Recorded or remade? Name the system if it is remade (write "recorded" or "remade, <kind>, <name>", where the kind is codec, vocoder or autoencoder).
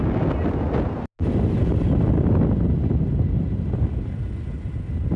recorded